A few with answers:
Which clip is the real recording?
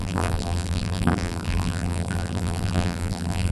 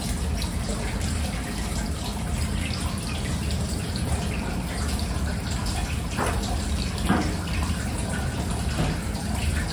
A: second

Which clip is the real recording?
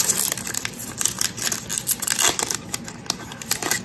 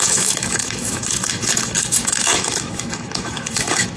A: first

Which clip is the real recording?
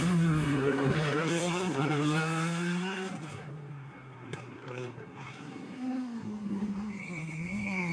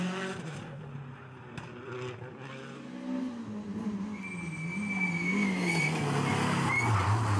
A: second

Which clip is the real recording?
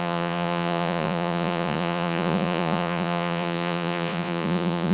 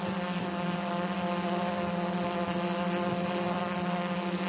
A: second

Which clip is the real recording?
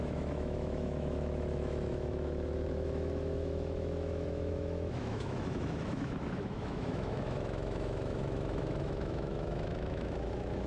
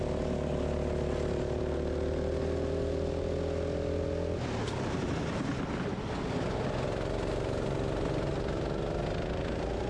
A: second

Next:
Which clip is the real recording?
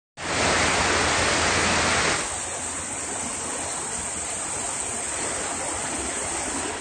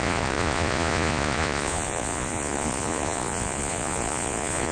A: first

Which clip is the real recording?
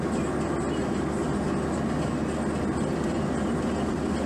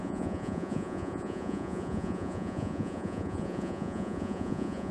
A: first